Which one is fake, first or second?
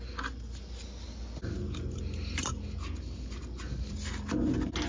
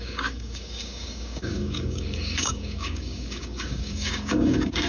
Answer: second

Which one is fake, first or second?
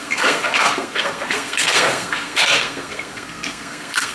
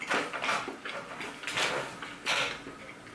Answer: first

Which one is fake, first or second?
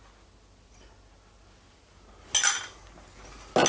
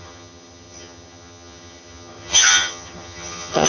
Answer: second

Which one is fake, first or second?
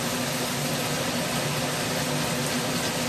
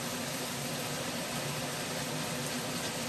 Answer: second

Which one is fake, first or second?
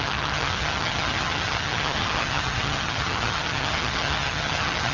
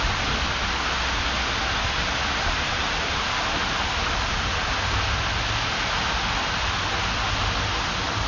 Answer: first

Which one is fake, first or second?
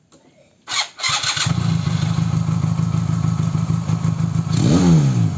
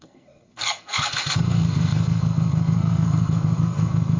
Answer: second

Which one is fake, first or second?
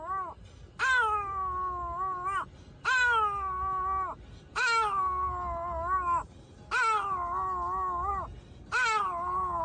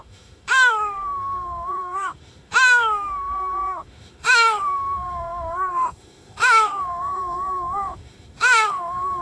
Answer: second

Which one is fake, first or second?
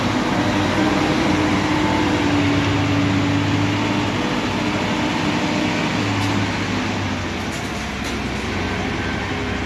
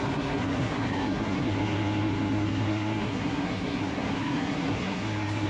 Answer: second